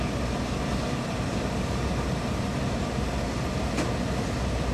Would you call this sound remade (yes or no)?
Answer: yes